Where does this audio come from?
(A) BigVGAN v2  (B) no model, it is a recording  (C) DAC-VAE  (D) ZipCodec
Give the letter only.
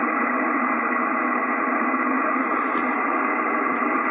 A